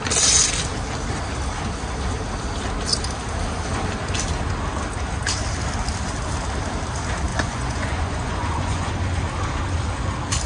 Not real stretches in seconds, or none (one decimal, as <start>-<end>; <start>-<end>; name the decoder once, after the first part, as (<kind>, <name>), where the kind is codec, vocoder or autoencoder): 7.3-8.9 (vocoder, Vocos)